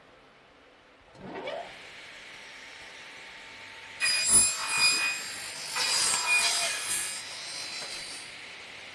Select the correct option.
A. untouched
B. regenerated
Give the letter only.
A